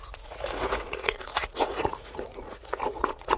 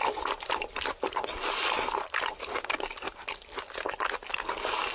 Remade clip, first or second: first